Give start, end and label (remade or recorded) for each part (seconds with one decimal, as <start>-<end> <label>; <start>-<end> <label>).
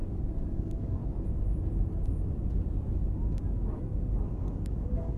0.0-0.5 recorded; 0.5-1.0 remade; 1.0-4.1 recorded; 4.1-5.2 remade